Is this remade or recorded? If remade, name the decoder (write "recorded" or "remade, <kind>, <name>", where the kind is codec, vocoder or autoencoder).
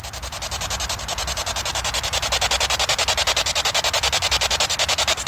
remade, vocoder, BigVGAN v2